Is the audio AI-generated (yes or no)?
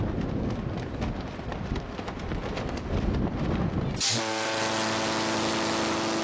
no